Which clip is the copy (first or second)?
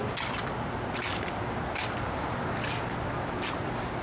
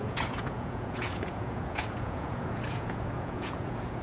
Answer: second